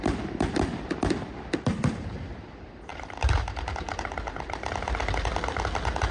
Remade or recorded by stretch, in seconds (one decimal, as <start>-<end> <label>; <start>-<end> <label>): 0.0-6.1 recorded